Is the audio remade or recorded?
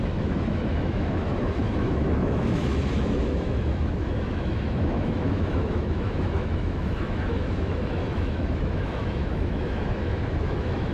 remade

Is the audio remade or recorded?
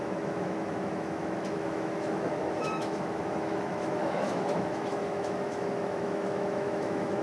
remade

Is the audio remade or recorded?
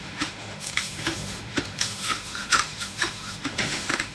remade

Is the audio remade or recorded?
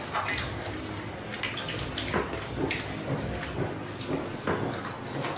recorded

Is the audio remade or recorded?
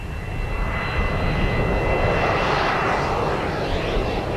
recorded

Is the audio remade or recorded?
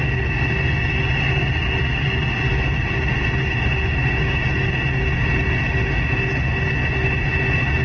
recorded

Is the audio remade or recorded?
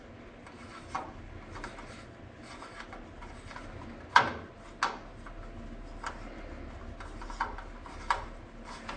recorded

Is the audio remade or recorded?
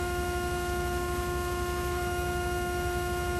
remade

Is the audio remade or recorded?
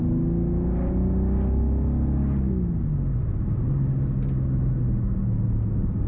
recorded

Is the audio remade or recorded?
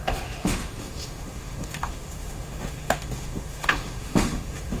remade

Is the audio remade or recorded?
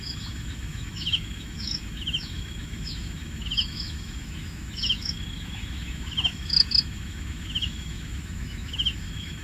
remade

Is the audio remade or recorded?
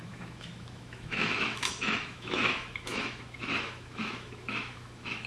remade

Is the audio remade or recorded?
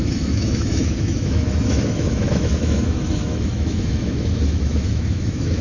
remade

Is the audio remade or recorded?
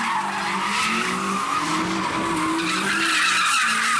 recorded